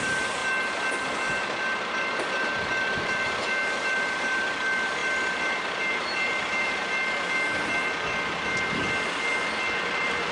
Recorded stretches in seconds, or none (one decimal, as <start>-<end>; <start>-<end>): 0.4-1.8; 6.8-9.9